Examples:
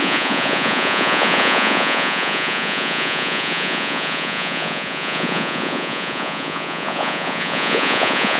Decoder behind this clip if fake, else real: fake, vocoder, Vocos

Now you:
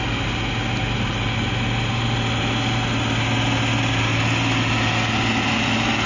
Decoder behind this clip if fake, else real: real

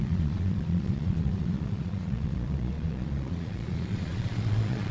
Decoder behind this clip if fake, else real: fake, vocoder, Vocos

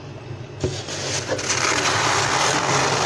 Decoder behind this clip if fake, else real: real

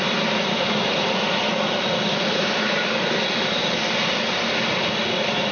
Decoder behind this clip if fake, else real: real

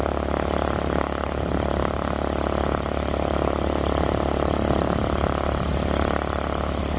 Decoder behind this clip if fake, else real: real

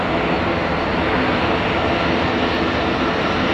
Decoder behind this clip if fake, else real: real